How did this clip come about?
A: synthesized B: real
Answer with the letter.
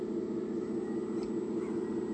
B